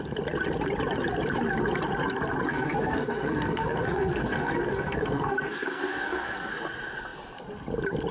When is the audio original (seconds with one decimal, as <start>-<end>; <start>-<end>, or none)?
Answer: 0.0-2.5; 6.5-8.1